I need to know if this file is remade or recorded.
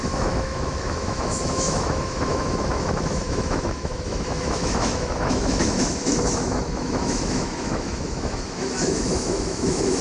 remade